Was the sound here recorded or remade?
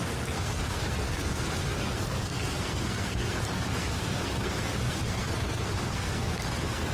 remade